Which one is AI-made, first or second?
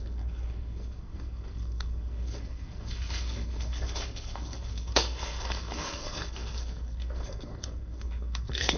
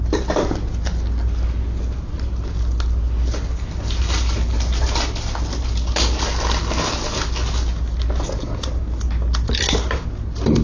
first